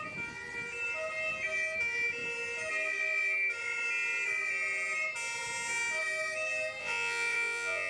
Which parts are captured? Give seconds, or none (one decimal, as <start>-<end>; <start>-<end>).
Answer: 0.0-6.8